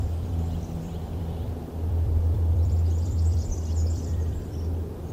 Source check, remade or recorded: remade